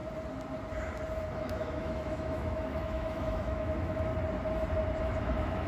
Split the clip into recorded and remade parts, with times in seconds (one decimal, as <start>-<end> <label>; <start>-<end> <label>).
0.0-1.4 recorded; 1.4-4.1 remade; 4.1-5.0 recorded; 5.0-5.7 remade